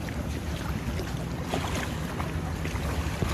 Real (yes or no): yes